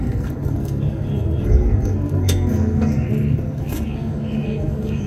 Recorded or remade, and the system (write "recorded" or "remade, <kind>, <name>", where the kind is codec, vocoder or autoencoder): remade, codec, SNAC